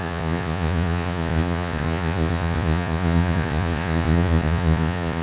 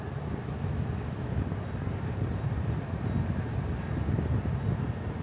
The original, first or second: second